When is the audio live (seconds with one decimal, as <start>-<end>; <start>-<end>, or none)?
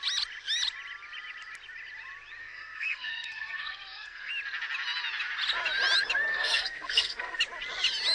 0.0-2.4; 4.3-6.3; 7.4-8.1